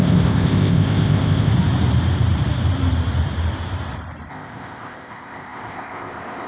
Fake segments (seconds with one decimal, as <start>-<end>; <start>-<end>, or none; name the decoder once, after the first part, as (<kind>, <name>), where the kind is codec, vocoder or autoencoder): 0.0-1.5 (codec, ZipCodec); 4.3-6.5